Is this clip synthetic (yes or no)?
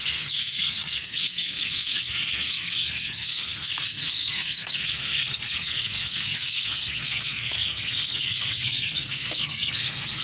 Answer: yes